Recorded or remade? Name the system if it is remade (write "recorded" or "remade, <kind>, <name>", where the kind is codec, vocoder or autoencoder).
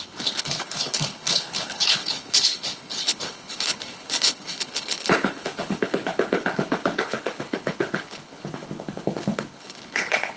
remade, codec, HILCodec